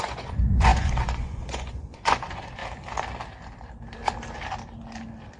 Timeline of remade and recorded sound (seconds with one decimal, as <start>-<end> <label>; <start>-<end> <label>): 0.0-2.6 remade; 2.6-5.4 recorded